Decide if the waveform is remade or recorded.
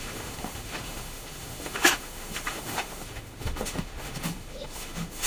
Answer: remade